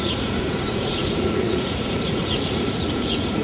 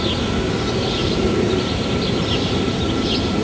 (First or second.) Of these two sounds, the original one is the second